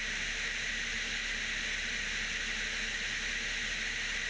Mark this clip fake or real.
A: real